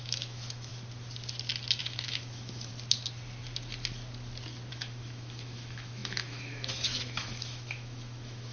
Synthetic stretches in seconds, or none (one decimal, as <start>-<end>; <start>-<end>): 0.0-0.7; 1.8-2.7; 4.7-8.5